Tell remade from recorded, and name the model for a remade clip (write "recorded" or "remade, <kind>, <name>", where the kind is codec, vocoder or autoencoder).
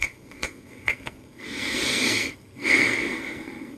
remade, codec, SNAC